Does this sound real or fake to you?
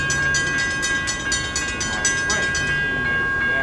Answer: real